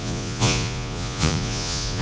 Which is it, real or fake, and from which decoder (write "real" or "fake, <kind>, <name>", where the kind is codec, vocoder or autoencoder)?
fake, vocoder, Vocos